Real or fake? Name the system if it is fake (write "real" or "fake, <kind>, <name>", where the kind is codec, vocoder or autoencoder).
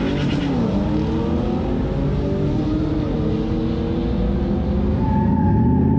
real